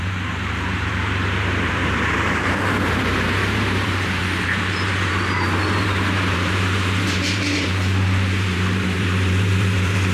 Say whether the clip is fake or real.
fake